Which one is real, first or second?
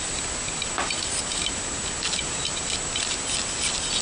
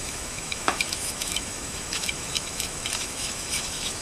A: first